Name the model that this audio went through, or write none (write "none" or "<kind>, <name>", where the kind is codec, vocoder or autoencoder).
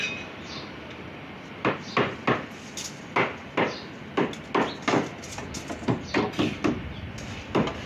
none